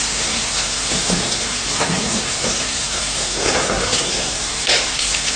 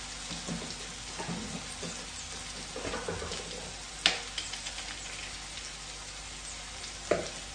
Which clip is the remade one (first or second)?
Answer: first